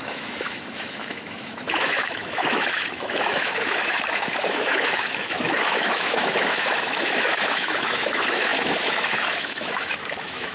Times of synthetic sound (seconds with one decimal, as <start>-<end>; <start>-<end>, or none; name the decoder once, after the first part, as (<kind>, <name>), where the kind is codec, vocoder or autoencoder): 0.0-10.5 (autoencoder, DAC-VAE)